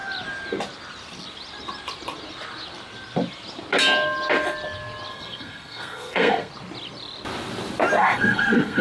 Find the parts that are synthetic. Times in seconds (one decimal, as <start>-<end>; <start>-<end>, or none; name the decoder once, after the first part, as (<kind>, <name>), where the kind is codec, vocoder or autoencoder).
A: 5.1-6.5 (codec, SNAC); 8.0-8.8

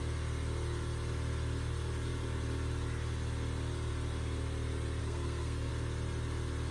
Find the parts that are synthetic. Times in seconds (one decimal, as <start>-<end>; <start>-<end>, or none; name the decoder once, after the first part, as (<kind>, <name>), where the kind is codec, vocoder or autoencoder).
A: 5.0-5.7 (codec, SNAC)

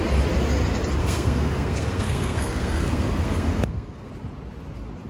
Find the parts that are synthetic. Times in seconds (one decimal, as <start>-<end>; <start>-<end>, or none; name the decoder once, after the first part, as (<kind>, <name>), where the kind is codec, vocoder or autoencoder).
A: 1.0-4.1 (codec, SNAC)

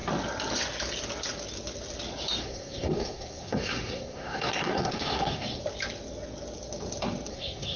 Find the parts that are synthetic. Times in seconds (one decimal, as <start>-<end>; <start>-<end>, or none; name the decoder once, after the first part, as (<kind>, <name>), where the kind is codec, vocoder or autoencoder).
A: 2.4-5.6 (codec, SNAC); 7.3-7.8

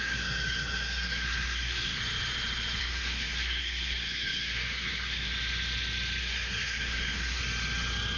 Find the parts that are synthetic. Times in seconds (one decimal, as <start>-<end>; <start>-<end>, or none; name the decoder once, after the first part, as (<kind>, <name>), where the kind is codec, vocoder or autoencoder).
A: 0.0-2.0 (codec, SNAC); 2.8-5.3; 6.2-7.4

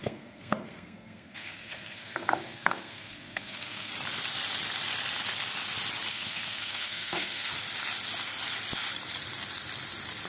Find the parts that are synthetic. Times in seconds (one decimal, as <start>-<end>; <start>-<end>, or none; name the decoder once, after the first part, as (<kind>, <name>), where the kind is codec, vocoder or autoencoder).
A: 0.0-3.9 (codec, SNAC); 6.1-7.5